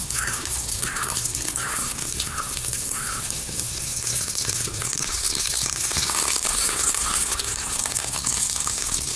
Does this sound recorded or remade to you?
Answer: remade